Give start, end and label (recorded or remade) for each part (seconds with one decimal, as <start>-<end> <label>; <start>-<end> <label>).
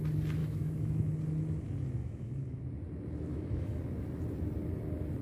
0.0-0.4 recorded; 0.4-1.1 remade; 1.1-2.0 recorded; 2.0-2.6 remade; 2.6-3.3 recorded; 3.3-3.8 remade; 3.8-5.2 recorded